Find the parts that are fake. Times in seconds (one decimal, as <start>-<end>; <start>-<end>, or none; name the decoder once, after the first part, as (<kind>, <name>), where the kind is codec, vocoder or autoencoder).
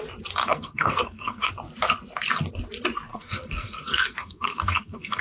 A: 0.4-1.5 (codec, SNAC); 3.1-5.2